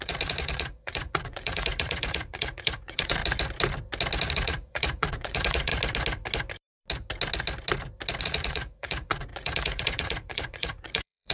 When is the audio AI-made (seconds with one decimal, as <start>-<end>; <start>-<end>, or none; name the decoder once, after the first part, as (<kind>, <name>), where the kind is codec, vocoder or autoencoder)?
0.0-3.2 (vocoder, Vocos); 4.3-5.7; 8.2-11.3